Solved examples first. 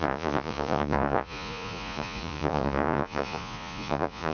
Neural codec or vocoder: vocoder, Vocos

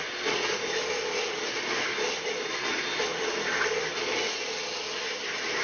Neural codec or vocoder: none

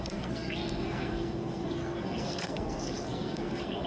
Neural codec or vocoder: codec, SNAC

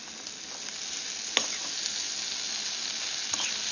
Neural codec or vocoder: none